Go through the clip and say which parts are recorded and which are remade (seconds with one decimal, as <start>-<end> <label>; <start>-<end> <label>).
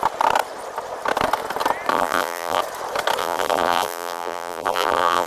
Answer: 0.0-1.9 recorded; 1.9-2.6 remade; 2.6-3.2 recorded; 3.2-5.3 remade